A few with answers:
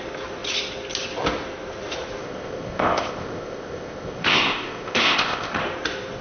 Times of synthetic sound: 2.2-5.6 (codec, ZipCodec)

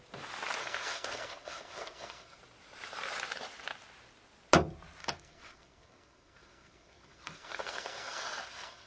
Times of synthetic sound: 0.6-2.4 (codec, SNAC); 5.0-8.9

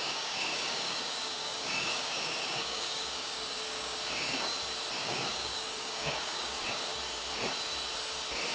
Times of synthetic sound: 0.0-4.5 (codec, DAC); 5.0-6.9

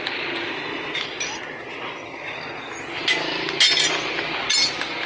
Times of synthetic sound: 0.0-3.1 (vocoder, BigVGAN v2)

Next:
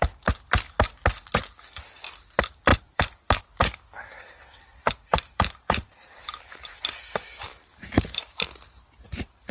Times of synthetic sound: 2.7-3.4 (vocoder, BigVGAN v2); 4.8-6.4; 7.7-9.5